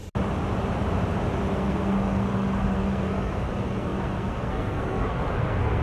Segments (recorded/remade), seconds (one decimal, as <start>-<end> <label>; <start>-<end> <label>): 0.0-1.5 recorded; 1.5-5.8 remade